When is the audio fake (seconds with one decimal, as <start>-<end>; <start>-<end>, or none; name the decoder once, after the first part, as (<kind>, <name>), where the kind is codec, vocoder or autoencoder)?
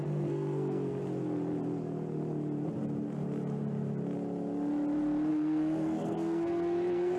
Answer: 0.0-1.0 (codec, SNAC); 5.3-7.2